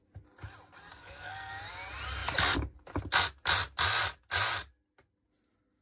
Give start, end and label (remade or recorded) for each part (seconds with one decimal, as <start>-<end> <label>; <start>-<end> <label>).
0.0-0.9 recorded; 0.9-1.5 remade; 1.5-5.8 recorded